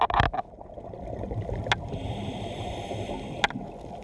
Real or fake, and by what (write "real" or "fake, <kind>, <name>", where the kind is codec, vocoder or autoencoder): real